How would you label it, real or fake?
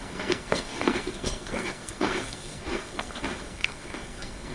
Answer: fake